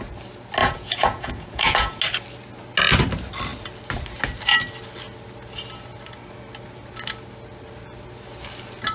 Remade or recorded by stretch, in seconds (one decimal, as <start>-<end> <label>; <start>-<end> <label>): 0.0-0.6 recorded; 0.6-2.0 remade; 2.0-8.9 recorded